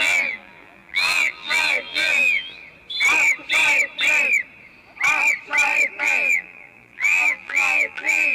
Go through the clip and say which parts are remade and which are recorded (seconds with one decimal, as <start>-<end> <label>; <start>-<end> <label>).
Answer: 0.0-2.6 remade; 2.6-6.0 recorded; 6.0-8.3 remade